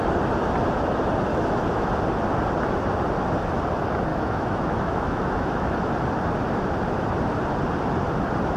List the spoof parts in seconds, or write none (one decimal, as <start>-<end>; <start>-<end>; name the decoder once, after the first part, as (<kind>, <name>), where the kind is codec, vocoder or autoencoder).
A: 1.3-1.9 (autoencoder, DAC-VAE); 4.1-5.9